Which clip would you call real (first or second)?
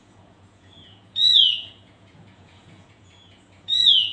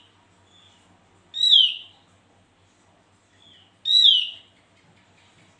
second